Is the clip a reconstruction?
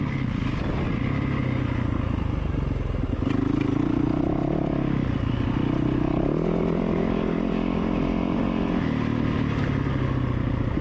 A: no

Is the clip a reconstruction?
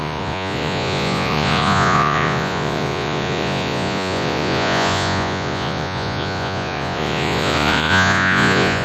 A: yes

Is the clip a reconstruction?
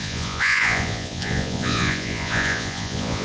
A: yes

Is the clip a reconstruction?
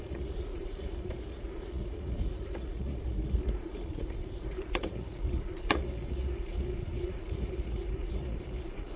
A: yes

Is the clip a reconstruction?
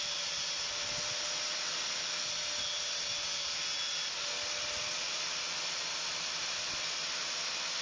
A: no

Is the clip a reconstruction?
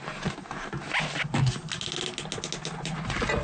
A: no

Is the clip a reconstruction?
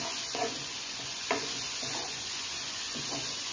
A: yes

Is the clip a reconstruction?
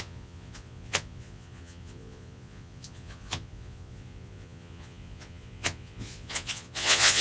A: yes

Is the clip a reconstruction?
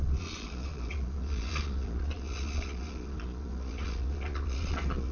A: yes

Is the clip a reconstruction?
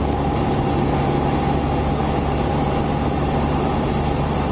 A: no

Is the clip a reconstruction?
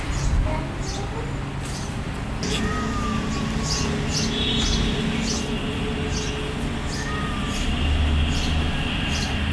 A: no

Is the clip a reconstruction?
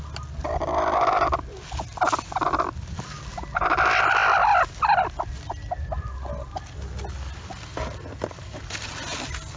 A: no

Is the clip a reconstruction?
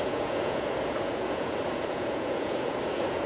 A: yes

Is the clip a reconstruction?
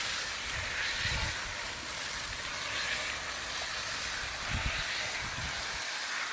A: no